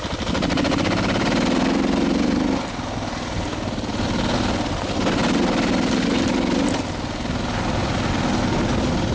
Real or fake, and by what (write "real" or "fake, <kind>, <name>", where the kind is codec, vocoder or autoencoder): real